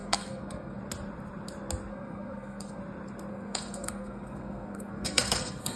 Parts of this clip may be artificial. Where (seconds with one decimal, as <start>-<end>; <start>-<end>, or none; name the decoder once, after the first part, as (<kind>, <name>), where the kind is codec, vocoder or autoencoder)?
0.0-0.8 (codec, SNAC); 1.9-2.8; 3.3-5.8